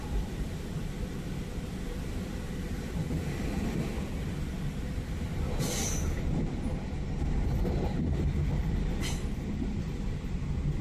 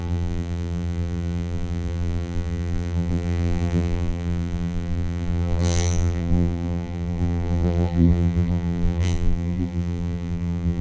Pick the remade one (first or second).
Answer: second